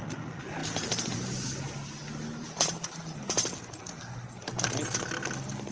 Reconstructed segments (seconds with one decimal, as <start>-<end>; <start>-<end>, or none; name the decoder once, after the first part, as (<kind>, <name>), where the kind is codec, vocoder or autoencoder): none